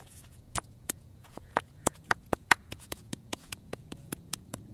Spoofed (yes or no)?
yes